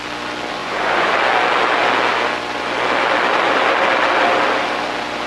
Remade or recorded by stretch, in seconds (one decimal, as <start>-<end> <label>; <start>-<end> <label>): 0.0-0.6 recorded; 0.6-1.1 remade; 1.1-5.3 recorded